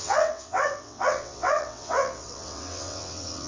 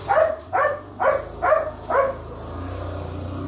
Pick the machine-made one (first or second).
first